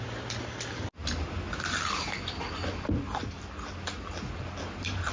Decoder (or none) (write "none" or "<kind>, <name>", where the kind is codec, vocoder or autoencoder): none